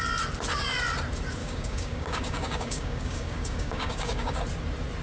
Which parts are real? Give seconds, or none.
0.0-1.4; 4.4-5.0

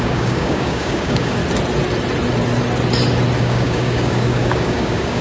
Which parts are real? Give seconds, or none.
1.4-3.4